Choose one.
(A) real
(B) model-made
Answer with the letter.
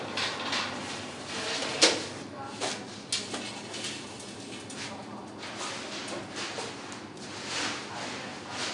A